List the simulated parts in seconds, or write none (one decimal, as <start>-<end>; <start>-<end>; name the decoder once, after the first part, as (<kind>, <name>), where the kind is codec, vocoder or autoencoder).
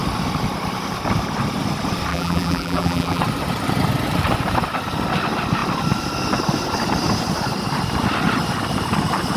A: 2.1-3.2 (vocoder, BigVGAN v2)